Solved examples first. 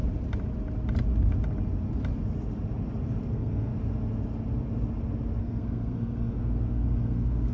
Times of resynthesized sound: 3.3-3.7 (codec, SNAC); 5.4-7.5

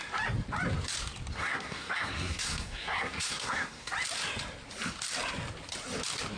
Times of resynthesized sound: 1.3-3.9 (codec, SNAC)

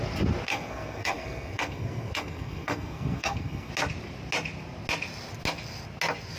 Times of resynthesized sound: 0.5-3.7 (codec, SNAC)

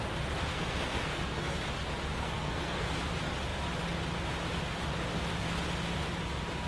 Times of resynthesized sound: 0.5-1.6 (codec, SNAC); 2.1-2.9